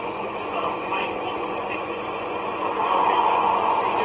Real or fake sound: fake